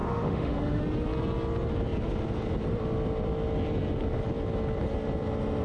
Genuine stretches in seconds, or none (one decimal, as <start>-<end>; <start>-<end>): 0.8-5.6